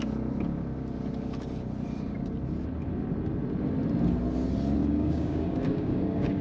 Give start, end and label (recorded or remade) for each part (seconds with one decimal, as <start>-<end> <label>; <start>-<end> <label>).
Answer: 0.0-4.8 recorded; 4.8-6.4 remade